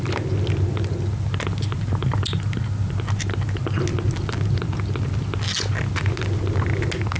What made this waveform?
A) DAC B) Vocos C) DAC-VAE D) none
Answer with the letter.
D